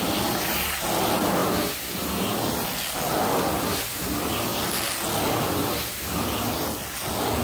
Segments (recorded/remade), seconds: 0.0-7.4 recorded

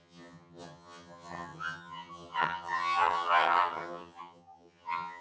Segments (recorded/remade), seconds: 0.0-5.2 remade

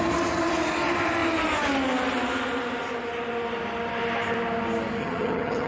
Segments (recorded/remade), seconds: 0.0-5.0 recorded; 5.0-5.7 remade